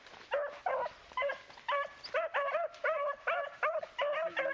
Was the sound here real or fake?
real